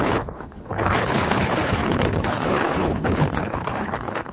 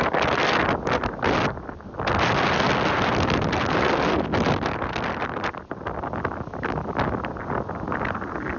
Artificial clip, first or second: first